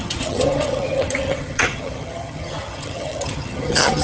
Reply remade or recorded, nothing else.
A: remade